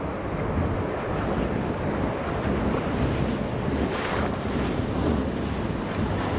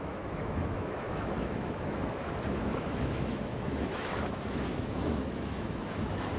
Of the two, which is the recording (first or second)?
first